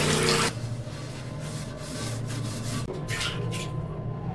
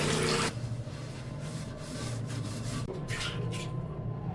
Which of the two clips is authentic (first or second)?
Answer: first